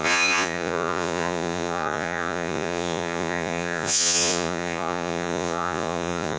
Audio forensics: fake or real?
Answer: fake